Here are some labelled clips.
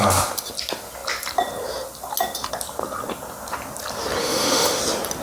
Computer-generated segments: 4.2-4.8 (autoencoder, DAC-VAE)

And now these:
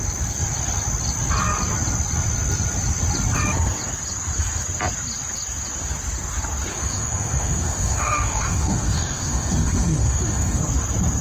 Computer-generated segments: 6.7-10.6 (autoencoder, DAC-VAE)

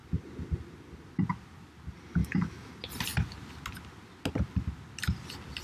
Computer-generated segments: 2.2-2.7 (autoencoder, DAC-VAE)